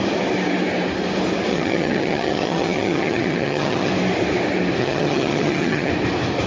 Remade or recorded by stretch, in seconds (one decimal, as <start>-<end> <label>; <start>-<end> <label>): 0.0-1.5 recorded; 1.5-3.9 remade; 3.9-4.8 recorded; 4.8-5.9 remade; 5.9-6.5 recorded